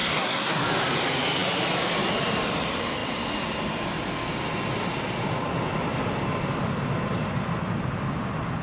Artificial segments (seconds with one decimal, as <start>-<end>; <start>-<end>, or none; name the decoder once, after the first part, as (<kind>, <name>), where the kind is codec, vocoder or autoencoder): 0.0-0.6 (codec, SNAC)